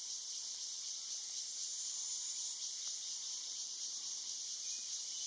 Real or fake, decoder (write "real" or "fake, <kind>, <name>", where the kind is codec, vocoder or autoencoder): real